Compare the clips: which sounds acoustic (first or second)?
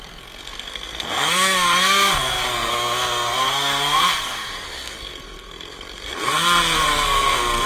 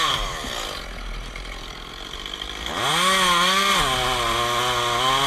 second